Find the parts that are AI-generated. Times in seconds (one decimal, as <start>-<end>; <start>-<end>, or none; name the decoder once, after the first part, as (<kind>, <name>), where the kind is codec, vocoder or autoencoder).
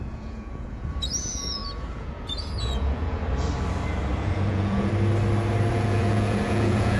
0.0-3.2 (vocoder, Vocos); 4.2-4.9; 5.7-7.0